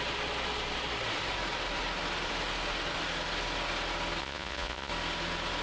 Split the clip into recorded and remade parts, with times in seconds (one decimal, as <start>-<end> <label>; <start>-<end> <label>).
0.0-4.2 recorded; 4.2-4.9 remade; 4.9-5.6 recorded